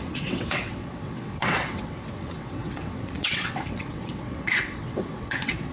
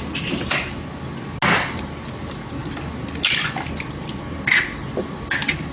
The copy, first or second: first